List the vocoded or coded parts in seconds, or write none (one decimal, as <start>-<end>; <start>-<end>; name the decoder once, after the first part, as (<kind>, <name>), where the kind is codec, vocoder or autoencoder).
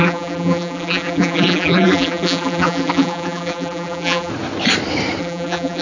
0.0-4.3 (vocoder, BigVGAN v2); 5.2-5.8